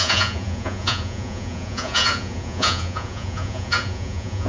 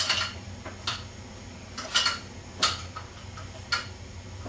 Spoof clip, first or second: first